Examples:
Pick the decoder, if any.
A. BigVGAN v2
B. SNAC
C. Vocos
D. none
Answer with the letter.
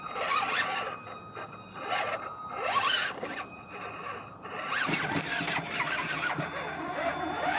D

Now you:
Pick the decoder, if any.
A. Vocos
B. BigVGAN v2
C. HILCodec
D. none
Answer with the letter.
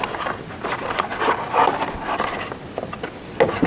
D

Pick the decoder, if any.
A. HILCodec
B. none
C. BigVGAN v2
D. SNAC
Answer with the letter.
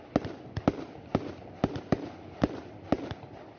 B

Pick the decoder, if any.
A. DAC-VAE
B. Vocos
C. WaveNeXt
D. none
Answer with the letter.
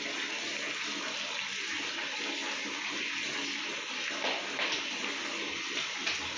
D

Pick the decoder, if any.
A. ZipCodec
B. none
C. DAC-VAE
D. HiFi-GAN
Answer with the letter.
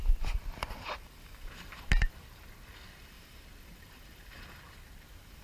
B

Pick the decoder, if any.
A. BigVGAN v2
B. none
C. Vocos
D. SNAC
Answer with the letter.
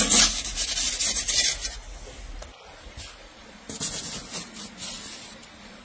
B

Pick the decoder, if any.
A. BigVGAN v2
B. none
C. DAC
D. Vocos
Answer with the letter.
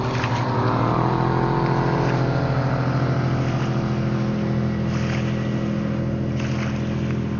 B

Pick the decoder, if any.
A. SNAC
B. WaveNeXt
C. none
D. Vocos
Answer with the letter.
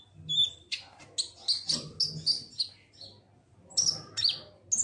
C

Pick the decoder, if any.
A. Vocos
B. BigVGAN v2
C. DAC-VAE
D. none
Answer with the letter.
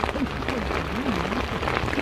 D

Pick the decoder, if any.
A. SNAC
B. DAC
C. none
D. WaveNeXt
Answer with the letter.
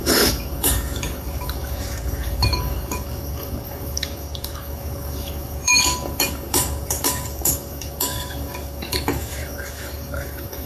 B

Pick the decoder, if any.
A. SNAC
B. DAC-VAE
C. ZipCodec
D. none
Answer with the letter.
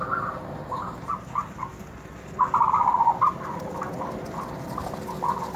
D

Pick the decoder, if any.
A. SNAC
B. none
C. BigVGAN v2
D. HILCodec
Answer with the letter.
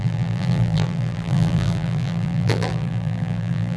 C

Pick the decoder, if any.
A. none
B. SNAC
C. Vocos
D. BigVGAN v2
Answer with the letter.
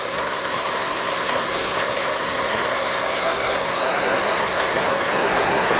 B